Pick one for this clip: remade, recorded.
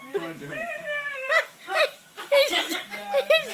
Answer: remade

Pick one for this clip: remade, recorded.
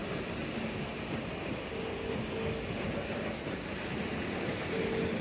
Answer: recorded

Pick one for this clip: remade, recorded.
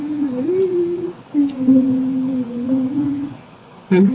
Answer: remade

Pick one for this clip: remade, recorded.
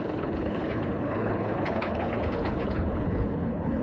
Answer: remade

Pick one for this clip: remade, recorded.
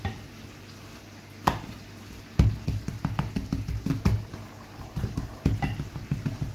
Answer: recorded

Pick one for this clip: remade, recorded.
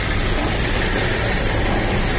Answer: recorded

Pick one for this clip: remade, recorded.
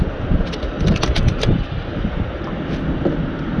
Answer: recorded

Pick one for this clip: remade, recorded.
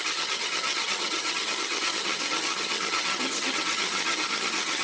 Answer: remade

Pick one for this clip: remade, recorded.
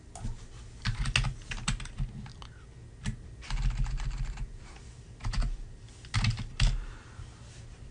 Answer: recorded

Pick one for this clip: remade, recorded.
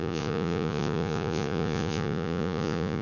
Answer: remade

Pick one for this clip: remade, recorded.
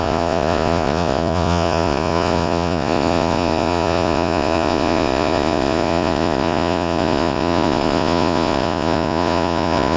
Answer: remade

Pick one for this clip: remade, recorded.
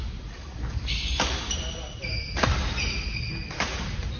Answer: recorded